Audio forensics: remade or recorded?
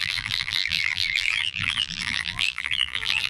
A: remade